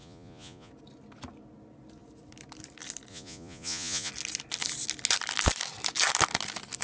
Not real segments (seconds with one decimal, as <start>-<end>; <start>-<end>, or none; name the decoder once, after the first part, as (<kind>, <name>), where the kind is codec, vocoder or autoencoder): 0.0-0.7 (vocoder, Vocos); 3.1-4.1